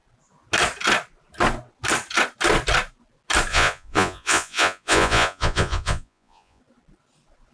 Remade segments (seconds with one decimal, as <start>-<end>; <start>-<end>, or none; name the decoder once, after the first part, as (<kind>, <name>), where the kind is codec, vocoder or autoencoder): 3.5-6.6 (vocoder, Vocos)